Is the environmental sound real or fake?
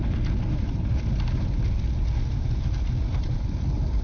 real